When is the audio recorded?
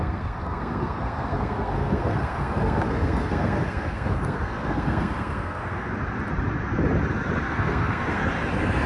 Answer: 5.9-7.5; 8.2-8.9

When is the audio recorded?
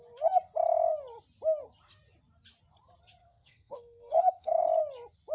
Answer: 0.0-3.2; 4.6-5.3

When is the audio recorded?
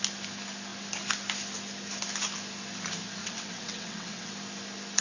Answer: 0.0-3.2; 4.3-5.0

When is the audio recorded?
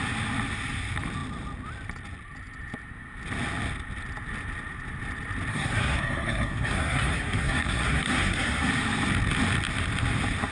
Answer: 0.0-5.5; 8.7-10.5